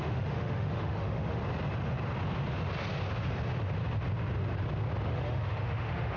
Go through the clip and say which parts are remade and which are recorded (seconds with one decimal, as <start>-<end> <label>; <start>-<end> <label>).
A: 0.0-1.4 remade; 1.4-5.1 recorded; 5.1-6.2 remade